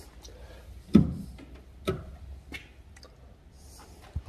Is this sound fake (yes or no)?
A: no